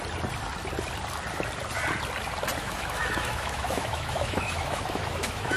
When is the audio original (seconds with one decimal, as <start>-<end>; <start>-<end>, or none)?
0.0-2.6